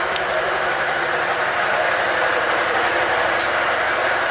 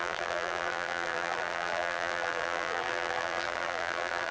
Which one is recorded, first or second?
first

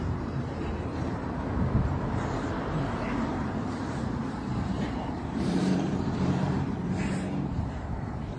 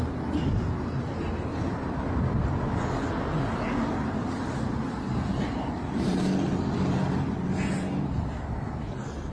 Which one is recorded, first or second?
second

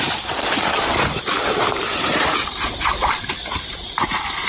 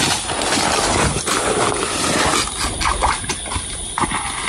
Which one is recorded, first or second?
second